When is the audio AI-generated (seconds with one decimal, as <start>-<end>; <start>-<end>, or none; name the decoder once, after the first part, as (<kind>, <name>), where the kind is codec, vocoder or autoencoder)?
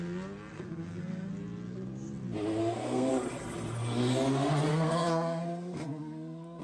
0.5-1.3 (codec, SNAC); 2.6-3.1; 4.7-6.6